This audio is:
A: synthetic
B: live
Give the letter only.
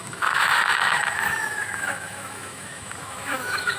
A